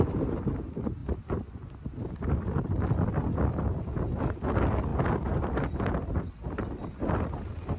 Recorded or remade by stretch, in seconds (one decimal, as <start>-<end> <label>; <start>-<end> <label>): 0.0-7.8 recorded